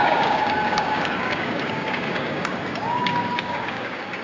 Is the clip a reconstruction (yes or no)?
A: yes